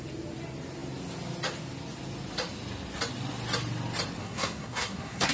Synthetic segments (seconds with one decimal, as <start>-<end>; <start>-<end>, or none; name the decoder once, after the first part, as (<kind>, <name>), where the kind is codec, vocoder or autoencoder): 4.2-5.3 (codec, SNAC)